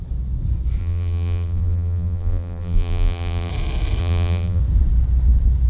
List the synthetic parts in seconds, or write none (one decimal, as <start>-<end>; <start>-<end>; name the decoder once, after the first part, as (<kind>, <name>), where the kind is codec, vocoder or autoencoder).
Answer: 0.8-3.5 (vocoder, BigVGAN v2); 4.0-4.6